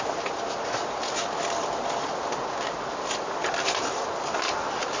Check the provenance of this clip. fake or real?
real